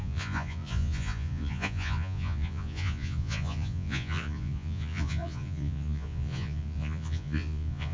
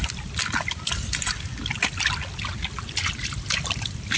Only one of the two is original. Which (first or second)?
second